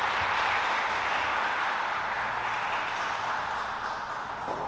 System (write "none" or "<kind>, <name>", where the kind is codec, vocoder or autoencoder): none